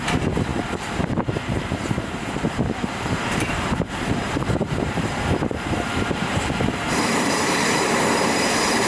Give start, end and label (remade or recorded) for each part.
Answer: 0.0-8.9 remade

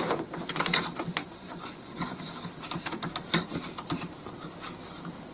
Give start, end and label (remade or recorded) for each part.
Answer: 0.0-1.2 recorded; 1.2-2.3 remade; 2.3-5.3 recorded

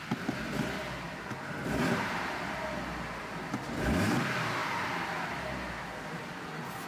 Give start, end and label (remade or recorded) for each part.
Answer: 0.0-6.9 recorded

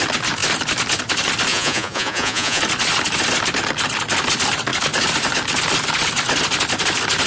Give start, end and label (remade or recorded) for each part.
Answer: 0.0-1.5 recorded; 1.5-2.6 remade; 2.6-7.3 recorded

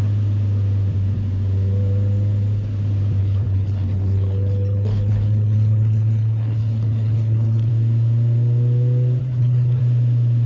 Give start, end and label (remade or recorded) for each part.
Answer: 0.0-3.2 recorded; 3.2-7.7 remade; 7.7-9.2 recorded; 9.2-9.8 remade; 9.8-10.5 recorded